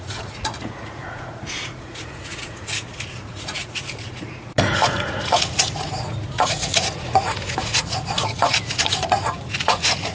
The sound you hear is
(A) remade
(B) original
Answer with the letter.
A